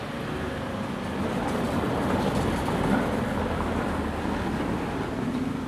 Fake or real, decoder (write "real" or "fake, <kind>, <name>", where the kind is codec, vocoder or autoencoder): real